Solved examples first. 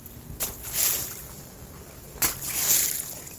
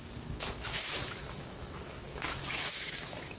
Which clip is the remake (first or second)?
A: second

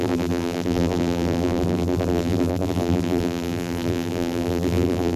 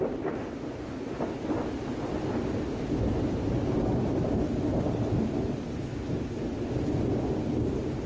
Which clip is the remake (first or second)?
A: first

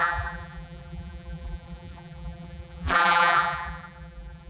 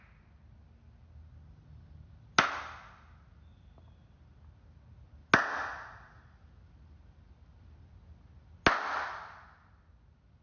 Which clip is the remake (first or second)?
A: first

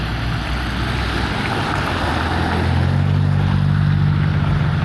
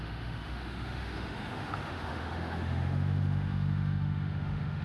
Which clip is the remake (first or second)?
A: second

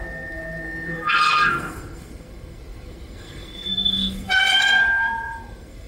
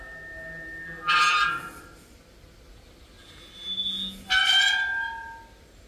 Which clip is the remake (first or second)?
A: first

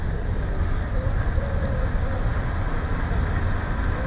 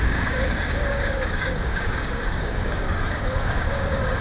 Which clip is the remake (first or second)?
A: second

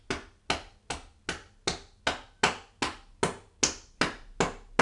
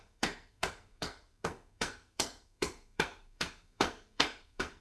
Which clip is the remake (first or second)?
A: second